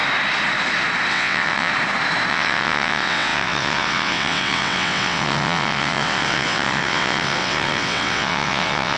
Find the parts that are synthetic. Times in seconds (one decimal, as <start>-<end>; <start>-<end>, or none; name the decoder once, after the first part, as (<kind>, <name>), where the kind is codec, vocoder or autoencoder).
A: 1.1-1.7 (vocoder, WaveNeXt); 2.3-9.0